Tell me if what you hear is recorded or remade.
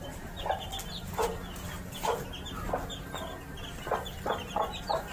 recorded